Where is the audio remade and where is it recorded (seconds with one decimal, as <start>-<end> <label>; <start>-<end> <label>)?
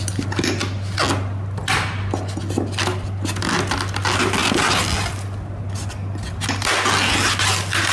0.0-7.9 recorded